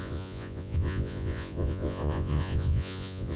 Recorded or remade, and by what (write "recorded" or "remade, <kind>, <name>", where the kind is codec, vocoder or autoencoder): remade, vocoder, Vocos